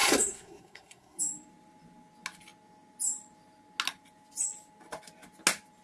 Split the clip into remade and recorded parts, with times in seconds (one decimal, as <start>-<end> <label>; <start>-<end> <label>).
0.0-1.2 remade; 1.2-5.8 recorded